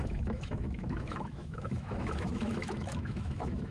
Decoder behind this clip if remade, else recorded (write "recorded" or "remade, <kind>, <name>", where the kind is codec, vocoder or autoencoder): remade, autoencoder, DAC-VAE